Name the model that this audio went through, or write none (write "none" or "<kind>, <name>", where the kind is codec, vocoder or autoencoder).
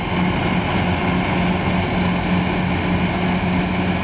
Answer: none